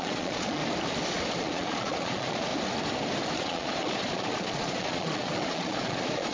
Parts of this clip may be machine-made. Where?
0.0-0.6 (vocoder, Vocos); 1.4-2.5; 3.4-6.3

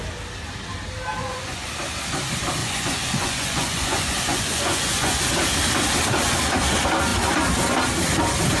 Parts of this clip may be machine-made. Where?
1.2-1.7 (vocoder, Vocos); 2.6-5.2

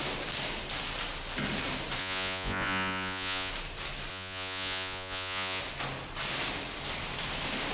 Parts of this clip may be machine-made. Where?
2.0-3.5 (vocoder, Vocos); 4.1-5.6

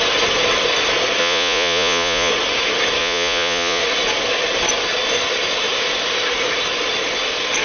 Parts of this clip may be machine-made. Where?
1.2-2.3 (vocoder, Vocos); 3.0-3.8

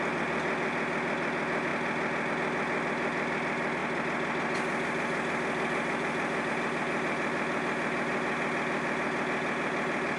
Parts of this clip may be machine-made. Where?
none

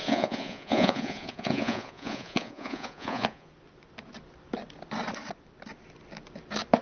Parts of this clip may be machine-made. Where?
0.0-3.5 (vocoder, Vocos)

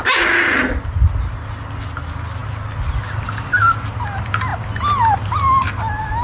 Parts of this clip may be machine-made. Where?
none